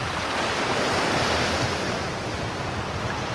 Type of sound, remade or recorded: recorded